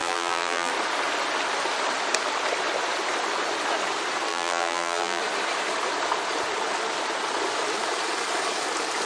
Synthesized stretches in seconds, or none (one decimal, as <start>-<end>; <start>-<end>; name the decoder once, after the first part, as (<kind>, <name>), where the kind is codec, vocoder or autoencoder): 0.0-0.7 (vocoder, BigVGAN v2); 4.3-5.2